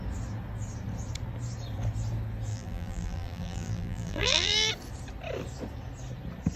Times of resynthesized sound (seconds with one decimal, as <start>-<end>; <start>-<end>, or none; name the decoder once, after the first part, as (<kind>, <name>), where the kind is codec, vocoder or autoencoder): 2.5-4.7 (vocoder, BigVGAN v2)